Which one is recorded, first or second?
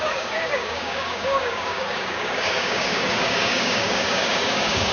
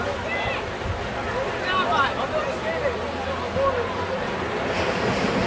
second